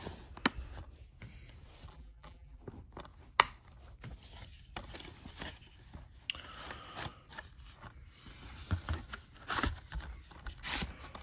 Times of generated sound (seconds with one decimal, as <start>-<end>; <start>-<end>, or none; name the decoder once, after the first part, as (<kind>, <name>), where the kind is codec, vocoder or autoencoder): 1.9-2.6 (vocoder, BigVGAN v2)